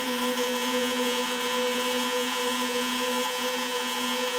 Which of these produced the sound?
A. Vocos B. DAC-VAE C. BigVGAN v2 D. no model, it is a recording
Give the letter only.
A